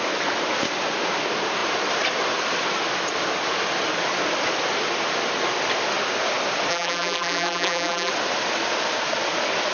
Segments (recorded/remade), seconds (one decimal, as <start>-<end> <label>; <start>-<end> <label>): 0.0-6.7 recorded; 6.7-8.1 remade; 8.1-9.7 recorded